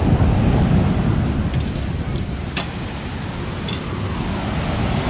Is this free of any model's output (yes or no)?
yes